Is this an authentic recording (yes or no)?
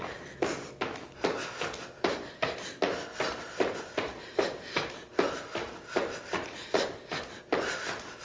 yes